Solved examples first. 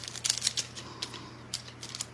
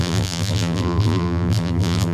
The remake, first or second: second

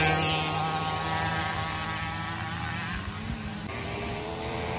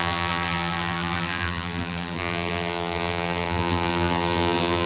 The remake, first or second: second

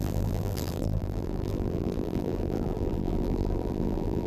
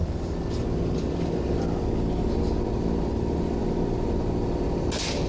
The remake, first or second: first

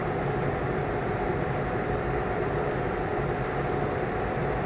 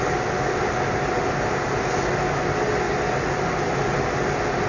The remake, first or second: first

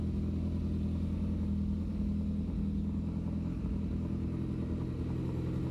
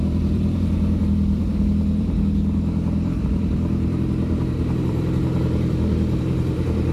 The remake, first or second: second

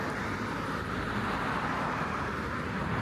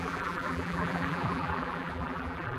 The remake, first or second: second